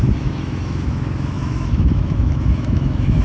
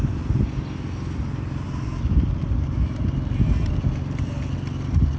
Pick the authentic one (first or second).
second